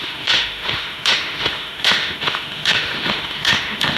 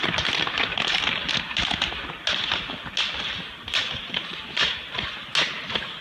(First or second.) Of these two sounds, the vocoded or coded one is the first